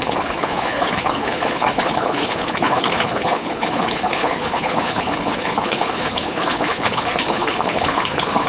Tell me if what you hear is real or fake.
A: fake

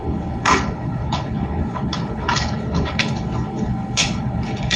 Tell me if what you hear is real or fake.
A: fake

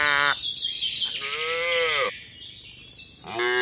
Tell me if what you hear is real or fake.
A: real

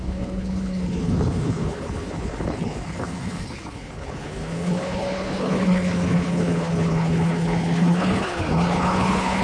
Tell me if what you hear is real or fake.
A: fake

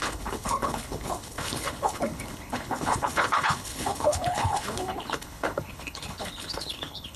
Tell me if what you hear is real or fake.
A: fake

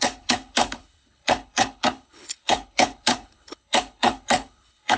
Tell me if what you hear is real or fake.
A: fake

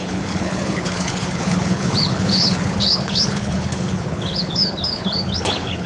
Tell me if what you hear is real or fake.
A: fake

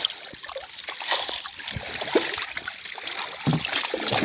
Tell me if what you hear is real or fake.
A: real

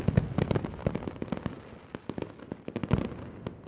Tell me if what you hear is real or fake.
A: real